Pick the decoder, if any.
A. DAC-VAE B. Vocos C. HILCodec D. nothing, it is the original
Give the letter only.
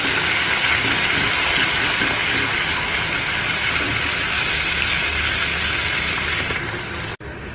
D